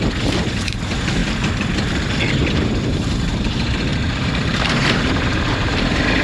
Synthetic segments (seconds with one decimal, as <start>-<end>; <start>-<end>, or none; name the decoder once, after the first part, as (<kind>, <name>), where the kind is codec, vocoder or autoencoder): 0.0-6.2 (vocoder, BigVGAN v2)

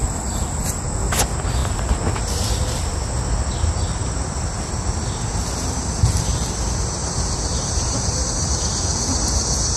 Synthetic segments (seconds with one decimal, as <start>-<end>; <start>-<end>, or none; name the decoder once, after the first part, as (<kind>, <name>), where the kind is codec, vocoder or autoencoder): 7.0-8.6 (vocoder, BigVGAN v2)

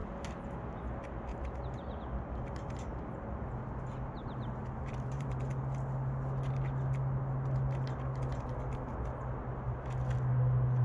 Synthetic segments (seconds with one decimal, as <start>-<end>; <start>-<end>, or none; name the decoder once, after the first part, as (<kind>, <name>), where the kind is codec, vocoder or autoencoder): 1.3-2.0 (vocoder, BigVGAN v2); 4.2-5.4

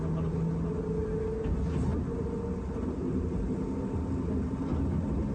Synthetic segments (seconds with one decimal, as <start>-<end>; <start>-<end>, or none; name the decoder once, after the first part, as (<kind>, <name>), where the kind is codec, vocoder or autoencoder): none